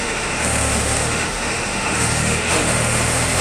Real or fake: fake